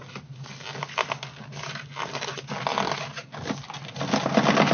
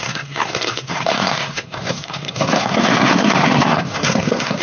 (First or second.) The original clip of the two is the first